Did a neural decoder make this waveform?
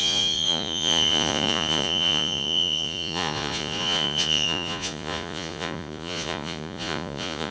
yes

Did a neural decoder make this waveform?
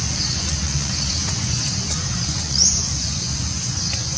yes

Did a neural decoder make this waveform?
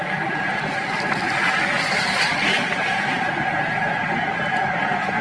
no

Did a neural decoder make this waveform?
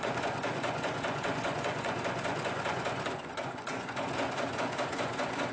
yes